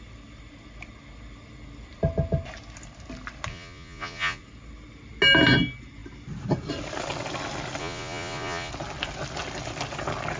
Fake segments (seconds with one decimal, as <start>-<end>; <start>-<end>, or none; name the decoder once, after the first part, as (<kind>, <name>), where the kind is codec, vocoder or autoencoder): 3.5-4.4 (vocoder, Vocos); 7.8-8.7